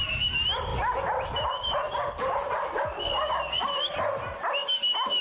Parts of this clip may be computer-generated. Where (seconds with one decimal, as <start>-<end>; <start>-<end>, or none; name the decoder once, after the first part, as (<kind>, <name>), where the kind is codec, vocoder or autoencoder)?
none

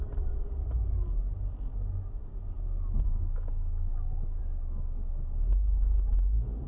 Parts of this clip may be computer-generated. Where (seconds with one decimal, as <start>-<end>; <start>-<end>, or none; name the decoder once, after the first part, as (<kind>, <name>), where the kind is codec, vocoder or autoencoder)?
none